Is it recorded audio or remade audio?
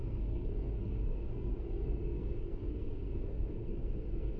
remade